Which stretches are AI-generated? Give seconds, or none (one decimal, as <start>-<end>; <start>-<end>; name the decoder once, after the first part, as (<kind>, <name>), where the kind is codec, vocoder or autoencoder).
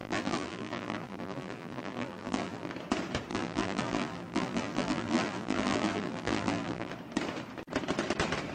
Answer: 0.0-2.7 (vocoder, BigVGAN v2); 3.3-6.9